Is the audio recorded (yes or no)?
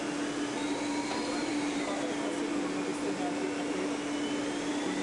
yes